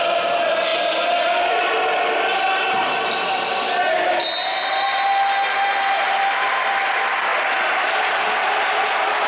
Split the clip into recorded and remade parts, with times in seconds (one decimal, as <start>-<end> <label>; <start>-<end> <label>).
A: 0.0-9.3 recorded